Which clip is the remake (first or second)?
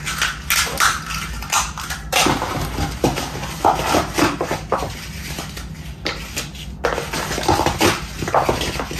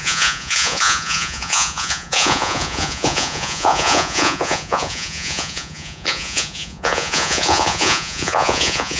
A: second